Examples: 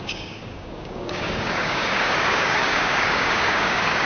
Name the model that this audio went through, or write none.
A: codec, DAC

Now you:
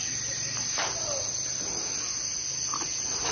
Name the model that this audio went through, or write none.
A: none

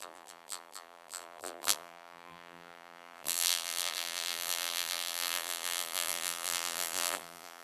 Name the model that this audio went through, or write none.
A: vocoder, BigVGAN v2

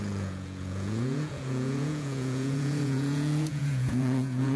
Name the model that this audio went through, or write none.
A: vocoder, Vocos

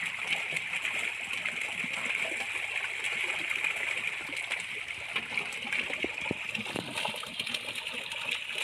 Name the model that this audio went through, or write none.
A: none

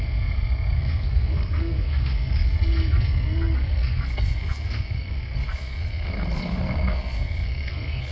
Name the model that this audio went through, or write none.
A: codec, SNAC